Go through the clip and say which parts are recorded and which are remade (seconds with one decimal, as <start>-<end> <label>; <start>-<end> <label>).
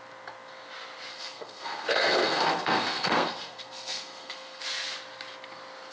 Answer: 0.0-1.1 recorded; 1.1-4.6 remade; 4.6-5.9 recorded